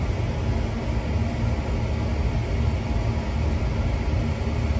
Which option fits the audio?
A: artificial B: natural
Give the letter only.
B